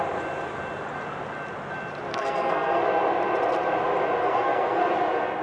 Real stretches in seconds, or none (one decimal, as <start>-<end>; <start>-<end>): 0.0-2.1; 2.8-4.2; 4.8-5.4